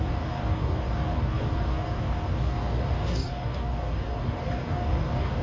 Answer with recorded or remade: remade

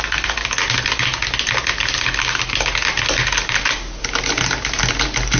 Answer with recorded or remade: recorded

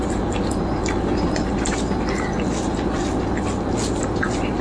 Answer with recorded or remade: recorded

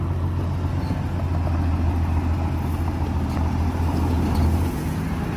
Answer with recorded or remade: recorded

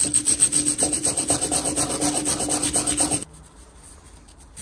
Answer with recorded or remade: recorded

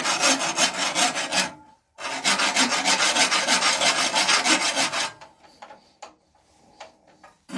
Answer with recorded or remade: recorded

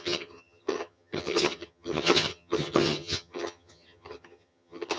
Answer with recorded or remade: remade